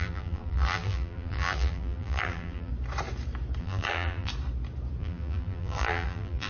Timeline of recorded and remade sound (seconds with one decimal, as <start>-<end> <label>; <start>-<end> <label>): 0.0-2.7 remade; 2.7-3.6 recorded; 3.6-4.3 remade; 4.3-5.0 recorded; 5.0-6.5 remade